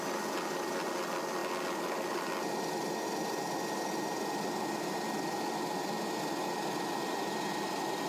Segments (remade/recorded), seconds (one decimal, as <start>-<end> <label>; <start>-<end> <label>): 0.0-8.1 recorded